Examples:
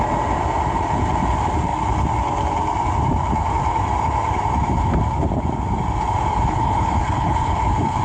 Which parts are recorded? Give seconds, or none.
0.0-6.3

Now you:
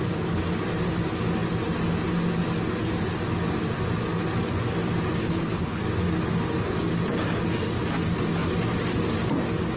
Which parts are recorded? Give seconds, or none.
0.0-5.2; 5.8-9.8

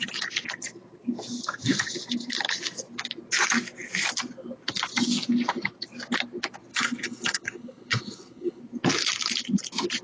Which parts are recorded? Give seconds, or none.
0.0-6.7; 8.6-10.0

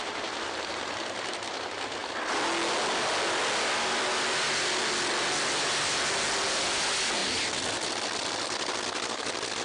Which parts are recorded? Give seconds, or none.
0.0-9.6

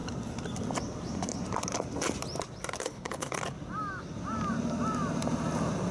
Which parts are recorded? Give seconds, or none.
0.0-2.8; 3.4-5.9

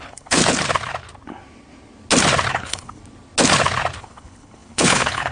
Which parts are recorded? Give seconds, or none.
0.4-2.5; 3.0-4.0

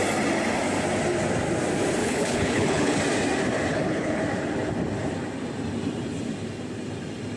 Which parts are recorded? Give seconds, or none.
0.0-2.0; 3.0-3.7; 4.2-7.4

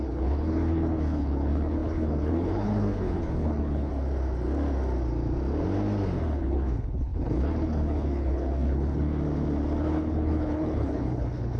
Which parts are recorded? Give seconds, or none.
3.9-6.4; 9.2-9.8